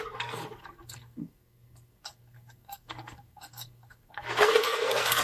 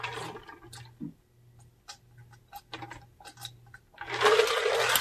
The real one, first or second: second